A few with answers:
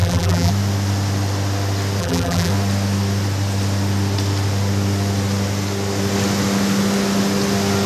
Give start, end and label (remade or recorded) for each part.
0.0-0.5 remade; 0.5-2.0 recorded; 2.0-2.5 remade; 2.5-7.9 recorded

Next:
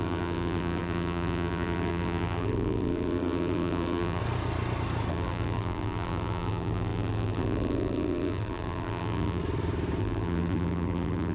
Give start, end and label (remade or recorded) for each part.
0.0-4.2 remade; 4.2-5.1 recorded; 5.1-9.4 remade; 9.4-10.0 recorded; 10.0-11.3 remade

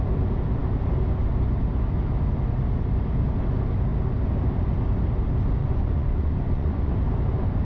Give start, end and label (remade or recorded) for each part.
0.0-5.6 recorded; 5.6-6.9 remade; 6.9-7.6 recorded

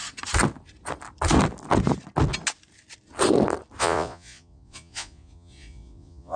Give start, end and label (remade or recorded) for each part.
0.0-3.8 recorded; 3.8-6.4 remade

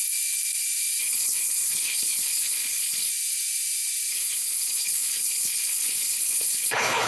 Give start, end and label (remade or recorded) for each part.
0.0-1.0 recorded; 1.0-3.1 remade; 3.1-4.1 recorded; 4.1-7.1 remade

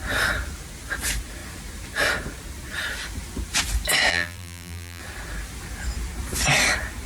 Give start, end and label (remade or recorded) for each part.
0.0-4.1 recorded; 4.1-5.0 remade; 5.0-7.1 recorded

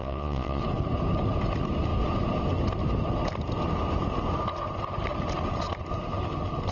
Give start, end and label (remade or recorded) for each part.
0.0-0.6 remade; 0.6-6.7 recorded